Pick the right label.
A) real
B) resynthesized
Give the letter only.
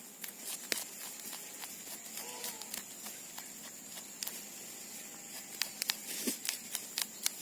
A